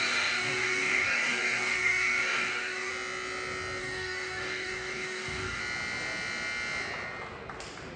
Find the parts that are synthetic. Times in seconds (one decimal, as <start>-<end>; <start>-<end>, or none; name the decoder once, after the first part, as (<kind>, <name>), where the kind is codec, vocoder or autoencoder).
0.0-2.9 (codec, DAC); 3.8-5.6